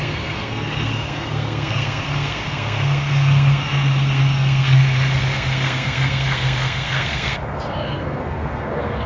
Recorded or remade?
remade